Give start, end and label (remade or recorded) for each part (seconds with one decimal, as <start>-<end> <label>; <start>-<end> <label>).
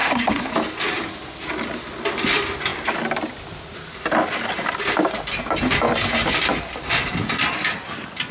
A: 0.0-0.5 remade; 0.5-8.3 recorded